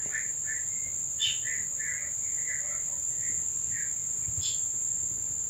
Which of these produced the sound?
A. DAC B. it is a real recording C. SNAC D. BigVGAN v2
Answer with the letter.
B